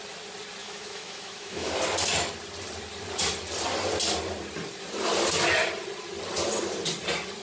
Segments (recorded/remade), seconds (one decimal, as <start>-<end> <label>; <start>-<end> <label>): 0.0-0.6 recorded; 0.6-1.7 remade; 1.7-7.4 recorded